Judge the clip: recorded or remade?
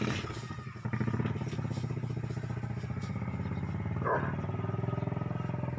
recorded